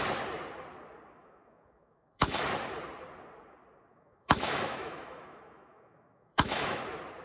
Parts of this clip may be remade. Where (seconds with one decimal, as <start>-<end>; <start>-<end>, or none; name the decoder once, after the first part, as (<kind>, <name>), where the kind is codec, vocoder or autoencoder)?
1.2-2.4 (autoencoder, DAC-VAE); 3.9-6.8